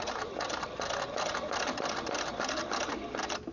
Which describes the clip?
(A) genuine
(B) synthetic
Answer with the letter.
A